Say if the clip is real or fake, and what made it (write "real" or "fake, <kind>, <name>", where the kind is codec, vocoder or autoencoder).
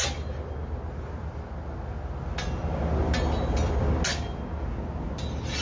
real